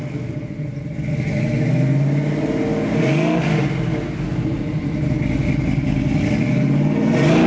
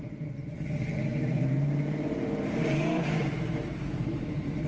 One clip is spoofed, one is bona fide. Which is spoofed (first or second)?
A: second